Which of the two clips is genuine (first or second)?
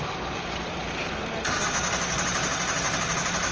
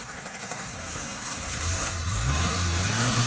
first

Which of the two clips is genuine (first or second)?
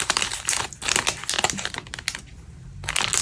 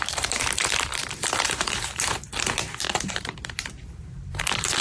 first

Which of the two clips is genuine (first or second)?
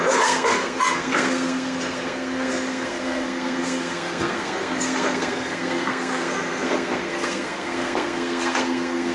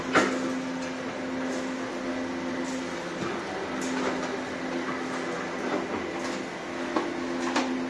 second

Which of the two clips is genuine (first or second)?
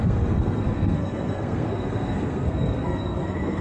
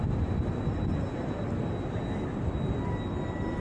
second